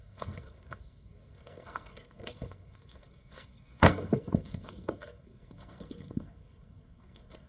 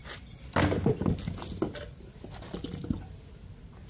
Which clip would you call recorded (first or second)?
second